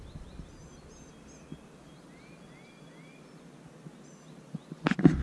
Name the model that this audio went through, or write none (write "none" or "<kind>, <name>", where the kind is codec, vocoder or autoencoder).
none